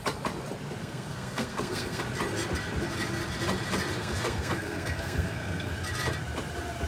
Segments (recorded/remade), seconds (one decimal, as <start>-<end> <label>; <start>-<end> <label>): 0.0-0.8 recorded; 0.8-2.0 remade; 2.0-4.0 recorded; 4.0-5.7 remade; 5.7-6.9 recorded